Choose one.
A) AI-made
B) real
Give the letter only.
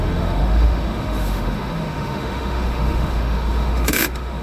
A